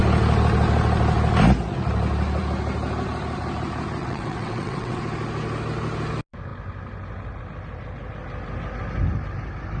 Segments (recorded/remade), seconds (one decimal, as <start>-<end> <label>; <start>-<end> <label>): 0.0-4.0 recorded; 4.0-5.0 remade; 5.0-9.8 recorded